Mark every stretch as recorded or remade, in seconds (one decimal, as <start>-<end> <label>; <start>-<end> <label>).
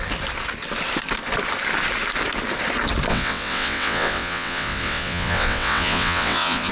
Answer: 0.0-3.1 recorded; 3.1-6.7 remade